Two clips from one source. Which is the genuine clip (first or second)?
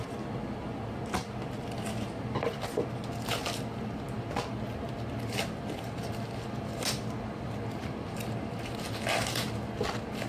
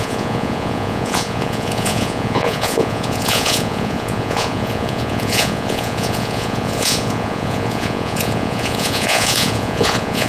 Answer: first